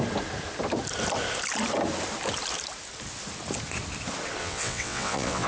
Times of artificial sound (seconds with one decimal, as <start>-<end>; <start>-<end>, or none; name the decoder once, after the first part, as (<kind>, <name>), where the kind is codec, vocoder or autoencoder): 4.4-5.5 (vocoder, WaveNeXt)